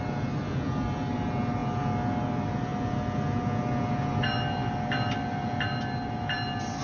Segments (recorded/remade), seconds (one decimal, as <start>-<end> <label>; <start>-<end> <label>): 0.0-6.8 recorded